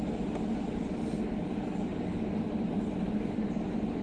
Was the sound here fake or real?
real